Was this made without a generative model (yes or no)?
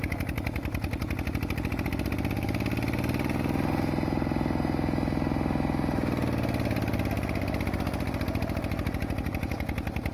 yes